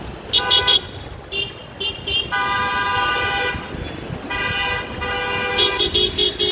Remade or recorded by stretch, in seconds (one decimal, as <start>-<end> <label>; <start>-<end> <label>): 0.0-6.5 recorded